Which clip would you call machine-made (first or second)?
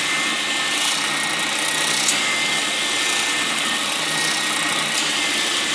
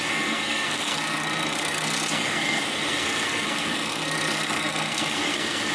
second